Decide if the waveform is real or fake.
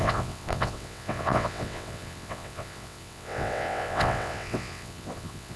fake